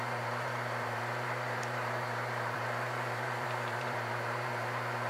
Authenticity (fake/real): fake